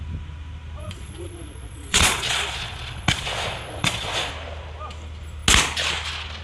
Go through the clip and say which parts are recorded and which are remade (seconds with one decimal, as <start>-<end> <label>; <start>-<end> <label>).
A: 0.0-0.8 recorded; 0.8-4.3 remade; 4.3-6.4 recorded